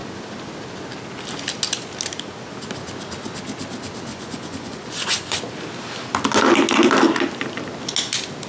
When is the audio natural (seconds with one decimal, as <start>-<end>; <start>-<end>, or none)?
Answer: 0.0-4.1; 5.4-8.5

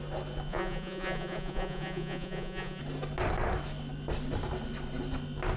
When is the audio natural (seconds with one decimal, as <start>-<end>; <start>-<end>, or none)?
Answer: 0.0-0.5; 2.8-5.6

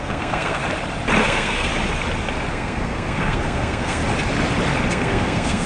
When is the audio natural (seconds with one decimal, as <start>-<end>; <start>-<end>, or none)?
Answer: 0.6-1.2; 1.7-2.5; 4.0-4.9

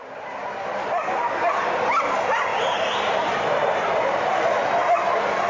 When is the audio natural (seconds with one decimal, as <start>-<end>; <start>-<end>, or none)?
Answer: 0.0-2.5; 4.0-5.5

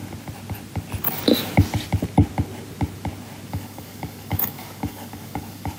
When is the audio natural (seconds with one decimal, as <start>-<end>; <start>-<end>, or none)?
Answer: 0.0-3.5

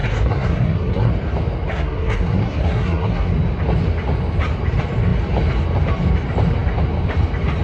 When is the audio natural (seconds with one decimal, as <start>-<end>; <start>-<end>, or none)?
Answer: 1.1-1.7; 3.3-7.6

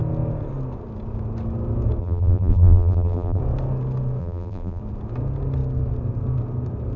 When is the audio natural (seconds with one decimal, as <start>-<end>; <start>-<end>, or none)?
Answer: 0.0-2.0; 3.4-4.2; 4.8-7.0

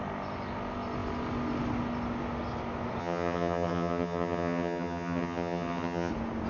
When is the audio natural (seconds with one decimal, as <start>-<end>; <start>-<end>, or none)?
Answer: 0.0-3.0; 6.1-6.5